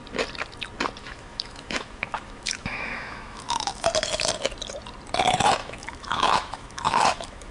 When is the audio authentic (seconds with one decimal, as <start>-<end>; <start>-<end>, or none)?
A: 0.0-1.0; 3.9-5.6